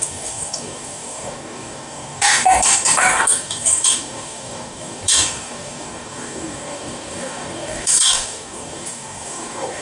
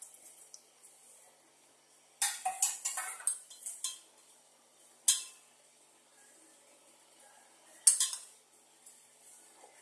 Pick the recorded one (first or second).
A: second